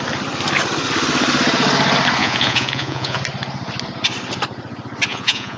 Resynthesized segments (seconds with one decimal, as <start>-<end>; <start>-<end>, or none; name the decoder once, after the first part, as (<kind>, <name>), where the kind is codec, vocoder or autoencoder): 2.2-3.2 (vocoder, Vocos); 5.1-5.6